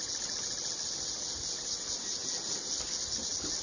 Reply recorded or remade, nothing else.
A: recorded